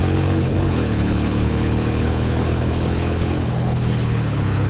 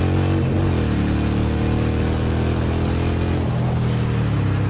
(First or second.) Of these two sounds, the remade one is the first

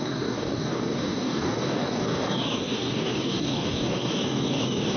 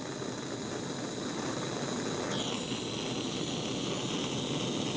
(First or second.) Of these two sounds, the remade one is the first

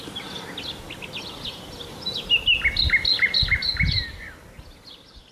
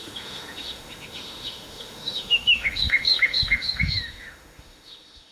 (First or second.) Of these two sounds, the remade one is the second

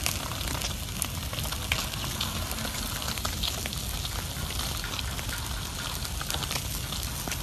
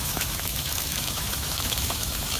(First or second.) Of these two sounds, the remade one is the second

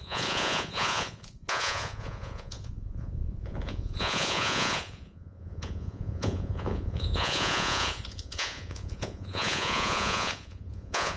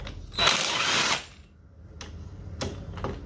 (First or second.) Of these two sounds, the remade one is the first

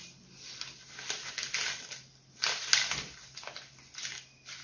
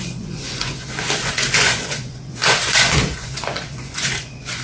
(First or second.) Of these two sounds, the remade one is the second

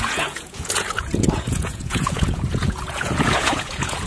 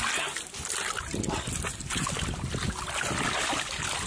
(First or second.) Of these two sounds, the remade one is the first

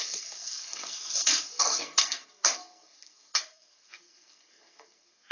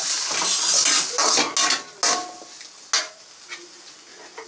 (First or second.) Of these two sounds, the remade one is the first